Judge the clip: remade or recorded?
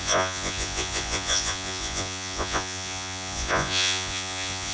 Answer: remade